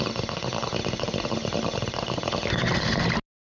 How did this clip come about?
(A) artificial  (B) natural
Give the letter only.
B